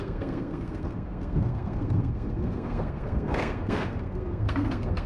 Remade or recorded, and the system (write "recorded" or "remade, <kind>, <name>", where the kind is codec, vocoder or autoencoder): remade, codec, SNAC